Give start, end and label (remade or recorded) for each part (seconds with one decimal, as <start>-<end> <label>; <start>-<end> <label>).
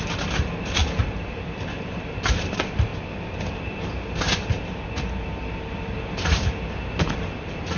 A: 0.0-2.9 remade; 2.9-5.7 recorded; 5.7-7.8 remade